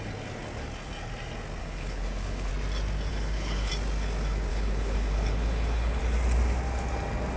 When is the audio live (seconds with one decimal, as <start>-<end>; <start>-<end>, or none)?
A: 0.0-1.6; 2.5-3.1; 3.7-4.5; 6.0-7.4